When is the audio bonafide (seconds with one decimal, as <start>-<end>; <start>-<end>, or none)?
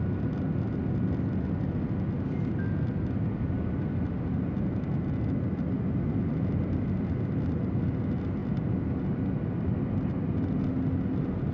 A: 0.0-11.5